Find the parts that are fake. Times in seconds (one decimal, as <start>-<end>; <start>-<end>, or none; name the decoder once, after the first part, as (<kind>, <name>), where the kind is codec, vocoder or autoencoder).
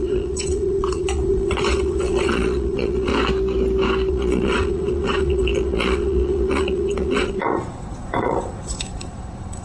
0.0-3.1 (vocoder, Vocos); 4.1-9.6